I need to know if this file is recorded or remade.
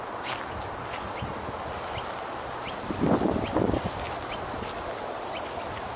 recorded